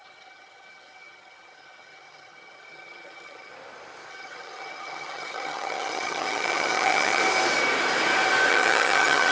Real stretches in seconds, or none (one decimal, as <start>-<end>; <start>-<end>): 3.5-4.1; 7.2-8.5